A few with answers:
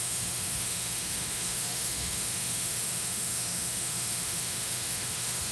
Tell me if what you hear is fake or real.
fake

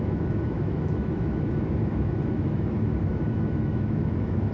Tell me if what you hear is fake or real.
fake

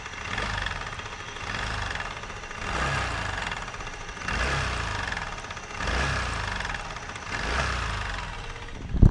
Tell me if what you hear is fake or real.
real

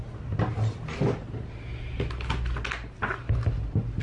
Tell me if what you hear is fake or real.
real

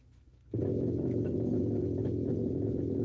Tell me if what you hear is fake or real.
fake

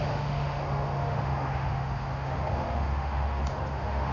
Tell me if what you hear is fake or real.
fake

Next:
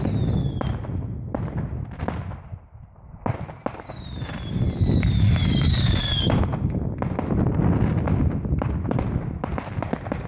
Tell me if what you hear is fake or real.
real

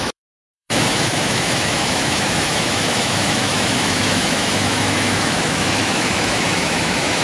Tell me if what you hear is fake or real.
fake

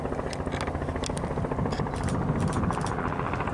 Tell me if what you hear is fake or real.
real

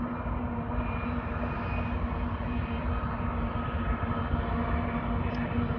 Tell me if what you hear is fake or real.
real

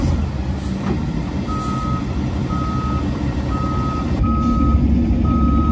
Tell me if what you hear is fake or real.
real